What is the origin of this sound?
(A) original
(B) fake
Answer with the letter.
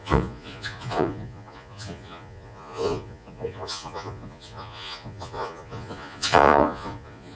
B